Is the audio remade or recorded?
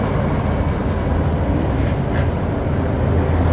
recorded